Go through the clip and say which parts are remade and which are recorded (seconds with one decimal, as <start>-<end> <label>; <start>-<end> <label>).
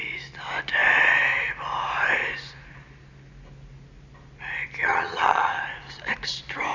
0.0-4.8 recorded; 4.8-5.6 remade; 5.6-6.7 recorded